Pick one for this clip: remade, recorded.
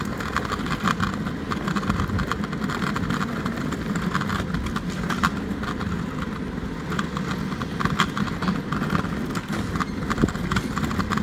recorded